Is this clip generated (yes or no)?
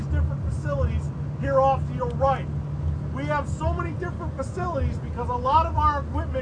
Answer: no